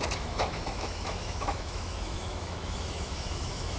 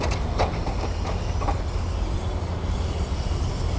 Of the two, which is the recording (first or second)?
second